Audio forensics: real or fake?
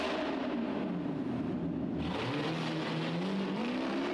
real